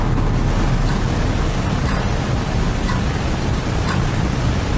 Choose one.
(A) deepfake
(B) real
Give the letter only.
A